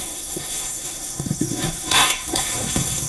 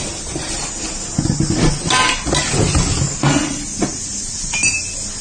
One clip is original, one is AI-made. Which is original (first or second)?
second